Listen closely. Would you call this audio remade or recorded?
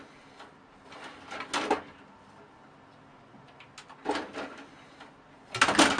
recorded